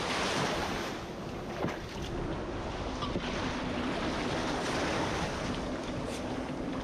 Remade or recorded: recorded